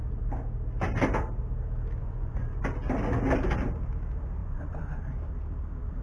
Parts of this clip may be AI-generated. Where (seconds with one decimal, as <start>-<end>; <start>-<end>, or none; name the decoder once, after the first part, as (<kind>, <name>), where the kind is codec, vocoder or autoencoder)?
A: 2.0-2.6 (vocoder, Vocos); 4.4-5.0